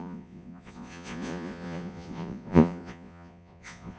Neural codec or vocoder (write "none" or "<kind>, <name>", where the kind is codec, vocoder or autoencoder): vocoder, Vocos